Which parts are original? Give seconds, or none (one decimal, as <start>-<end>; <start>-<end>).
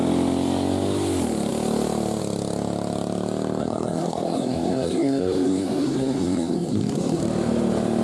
0.0-3.6; 7.2-8.0